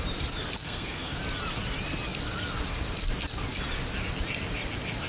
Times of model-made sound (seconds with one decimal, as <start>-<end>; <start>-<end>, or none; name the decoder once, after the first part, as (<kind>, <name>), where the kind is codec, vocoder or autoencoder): 0.6-1.2 (codec, SNAC)